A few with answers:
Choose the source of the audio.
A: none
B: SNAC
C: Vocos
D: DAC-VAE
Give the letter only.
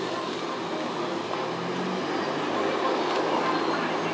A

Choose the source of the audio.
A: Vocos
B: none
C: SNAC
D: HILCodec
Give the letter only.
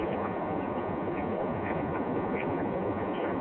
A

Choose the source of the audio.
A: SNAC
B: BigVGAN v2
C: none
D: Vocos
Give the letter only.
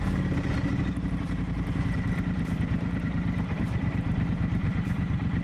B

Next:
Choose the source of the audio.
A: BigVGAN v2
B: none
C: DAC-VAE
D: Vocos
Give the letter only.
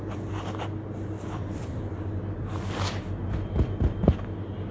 A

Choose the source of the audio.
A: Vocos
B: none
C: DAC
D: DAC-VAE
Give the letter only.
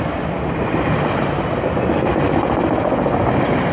B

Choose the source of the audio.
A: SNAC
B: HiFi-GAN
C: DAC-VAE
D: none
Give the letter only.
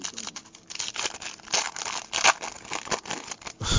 D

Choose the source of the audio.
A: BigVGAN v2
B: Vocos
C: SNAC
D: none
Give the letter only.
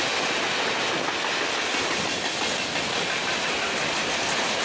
D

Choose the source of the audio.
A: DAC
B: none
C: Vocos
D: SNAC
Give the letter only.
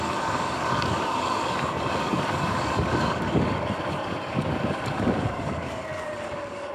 A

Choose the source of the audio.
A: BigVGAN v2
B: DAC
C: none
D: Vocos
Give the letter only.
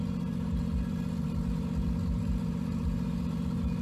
C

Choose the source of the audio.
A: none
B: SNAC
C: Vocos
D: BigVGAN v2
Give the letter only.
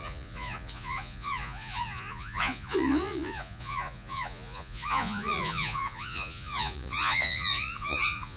C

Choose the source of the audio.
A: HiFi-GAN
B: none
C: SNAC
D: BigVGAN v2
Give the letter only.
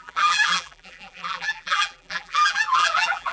D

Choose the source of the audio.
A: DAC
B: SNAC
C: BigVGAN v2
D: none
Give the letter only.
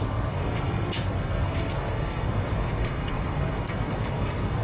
B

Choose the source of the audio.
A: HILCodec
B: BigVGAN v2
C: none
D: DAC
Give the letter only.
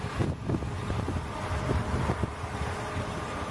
C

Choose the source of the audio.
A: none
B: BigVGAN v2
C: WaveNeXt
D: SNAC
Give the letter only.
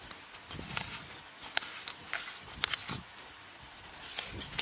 A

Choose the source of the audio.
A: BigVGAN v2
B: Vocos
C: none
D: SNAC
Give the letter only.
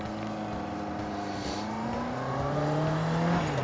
C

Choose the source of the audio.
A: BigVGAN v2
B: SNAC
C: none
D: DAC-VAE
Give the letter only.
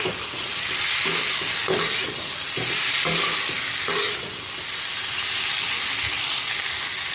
C